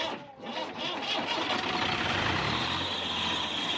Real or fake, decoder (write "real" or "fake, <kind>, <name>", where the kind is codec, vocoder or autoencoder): real